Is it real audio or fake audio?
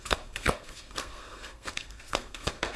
fake